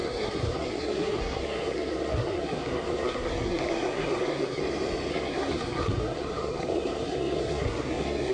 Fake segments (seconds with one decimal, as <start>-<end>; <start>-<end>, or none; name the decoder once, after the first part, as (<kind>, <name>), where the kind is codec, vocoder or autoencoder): 0.0-4.6 (codec, SNAC); 5.1-8.3